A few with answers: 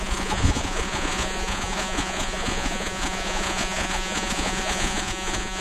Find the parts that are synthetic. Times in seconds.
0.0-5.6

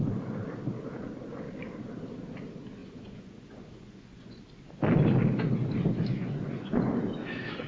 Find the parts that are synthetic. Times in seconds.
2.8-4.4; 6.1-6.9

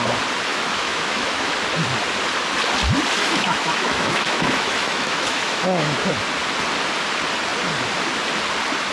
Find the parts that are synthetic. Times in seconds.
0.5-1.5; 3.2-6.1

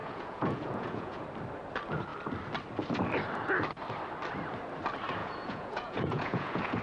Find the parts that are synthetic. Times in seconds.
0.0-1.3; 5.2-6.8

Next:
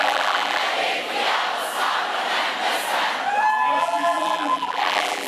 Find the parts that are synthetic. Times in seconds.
0.0-0.6; 3.8-5.3